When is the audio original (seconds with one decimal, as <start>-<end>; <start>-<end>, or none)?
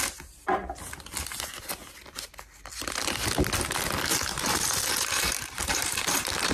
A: 0.0-4.1